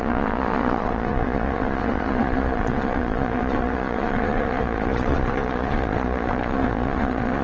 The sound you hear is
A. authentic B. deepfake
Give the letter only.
B